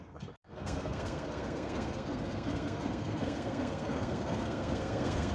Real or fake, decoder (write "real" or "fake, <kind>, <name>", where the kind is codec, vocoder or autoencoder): fake, codec, SNAC